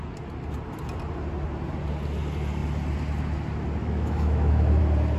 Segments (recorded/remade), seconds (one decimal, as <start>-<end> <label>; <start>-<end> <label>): 0.0-3.8 recorded; 3.8-4.8 remade; 4.8-5.2 recorded